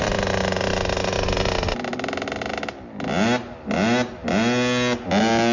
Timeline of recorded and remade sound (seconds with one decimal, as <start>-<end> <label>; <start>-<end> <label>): 0.0-5.5 recorded